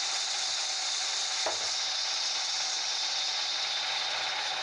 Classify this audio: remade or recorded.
recorded